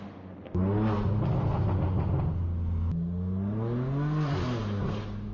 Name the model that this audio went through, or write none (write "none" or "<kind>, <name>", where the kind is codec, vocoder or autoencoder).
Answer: none